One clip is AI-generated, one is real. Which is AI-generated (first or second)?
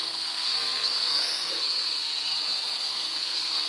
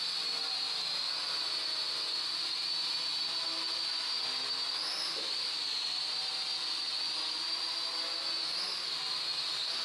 first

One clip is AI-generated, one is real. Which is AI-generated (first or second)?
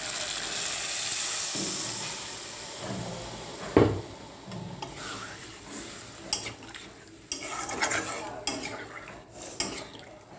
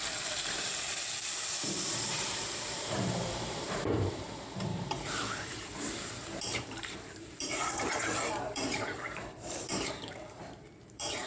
second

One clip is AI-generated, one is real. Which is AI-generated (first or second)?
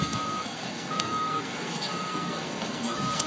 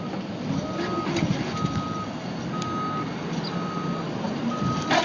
first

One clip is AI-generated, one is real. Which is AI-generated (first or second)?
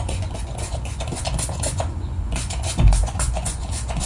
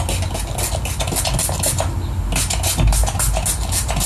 first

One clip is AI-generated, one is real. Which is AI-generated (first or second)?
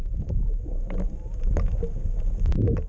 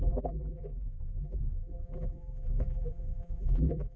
second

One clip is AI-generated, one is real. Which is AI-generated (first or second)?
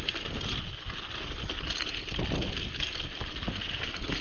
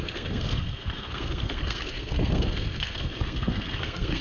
second